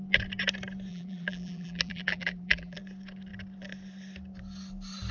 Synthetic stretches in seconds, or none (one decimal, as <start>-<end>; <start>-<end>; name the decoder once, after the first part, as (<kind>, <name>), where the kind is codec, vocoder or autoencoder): 0.9-2.8 (vocoder, BigVGAN v2)